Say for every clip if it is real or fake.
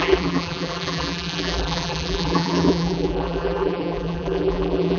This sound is fake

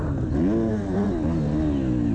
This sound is real